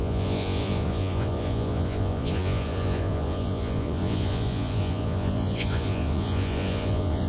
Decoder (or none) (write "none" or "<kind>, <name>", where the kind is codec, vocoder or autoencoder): vocoder, Vocos